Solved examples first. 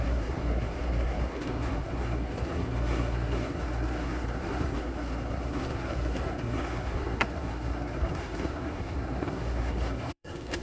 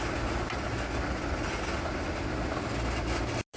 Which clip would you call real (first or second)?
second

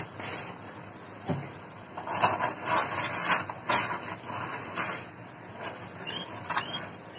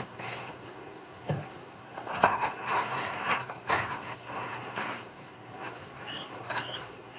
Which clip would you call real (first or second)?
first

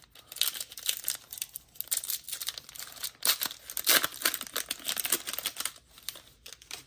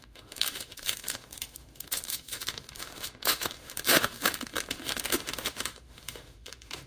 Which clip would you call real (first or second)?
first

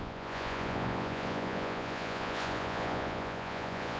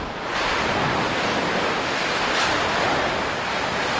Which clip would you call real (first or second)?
second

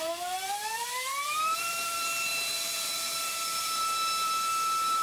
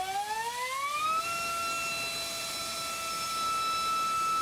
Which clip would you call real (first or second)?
second